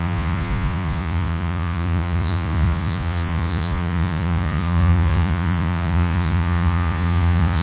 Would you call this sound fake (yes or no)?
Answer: yes